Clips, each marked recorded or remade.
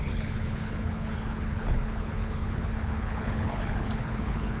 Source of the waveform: remade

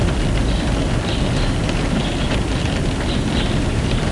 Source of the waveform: recorded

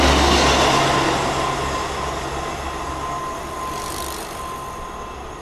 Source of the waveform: recorded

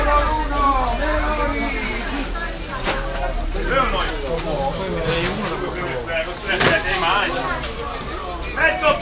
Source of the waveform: recorded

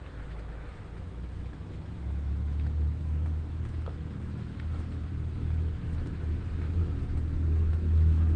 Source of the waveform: remade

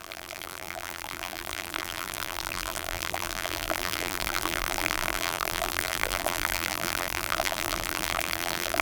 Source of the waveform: remade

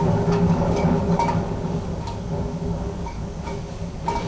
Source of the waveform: remade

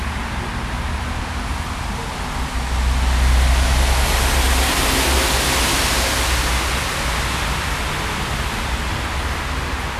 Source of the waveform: recorded